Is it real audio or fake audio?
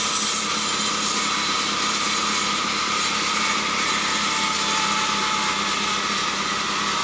real